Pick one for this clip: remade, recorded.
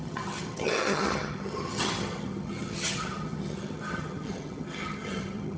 remade